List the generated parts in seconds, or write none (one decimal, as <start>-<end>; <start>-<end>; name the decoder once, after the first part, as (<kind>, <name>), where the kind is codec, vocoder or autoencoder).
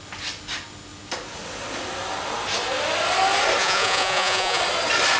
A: 3.6-4.6 (vocoder, Vocos)